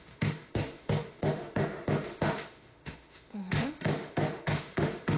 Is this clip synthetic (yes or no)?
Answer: yes